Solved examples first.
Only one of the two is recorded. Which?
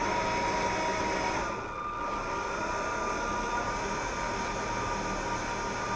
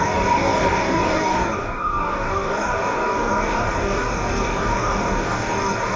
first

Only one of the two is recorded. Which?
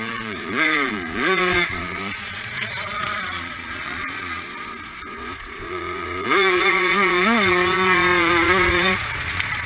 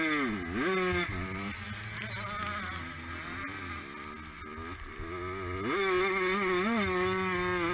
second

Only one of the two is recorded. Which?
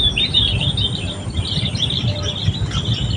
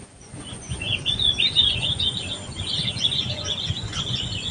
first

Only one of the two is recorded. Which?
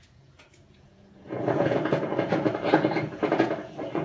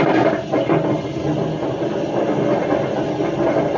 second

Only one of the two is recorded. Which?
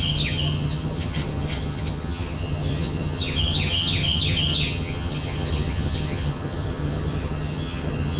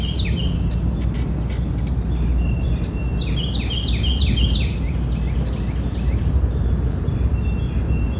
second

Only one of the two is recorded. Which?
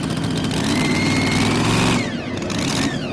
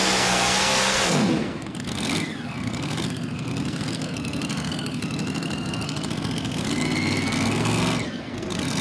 first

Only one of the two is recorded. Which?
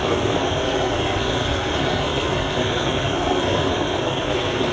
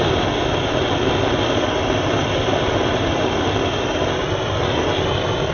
second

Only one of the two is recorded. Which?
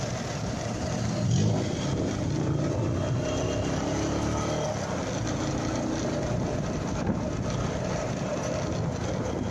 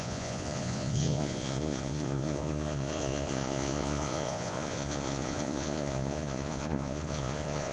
first